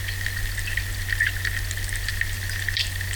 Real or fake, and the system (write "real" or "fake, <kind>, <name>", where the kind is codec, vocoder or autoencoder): real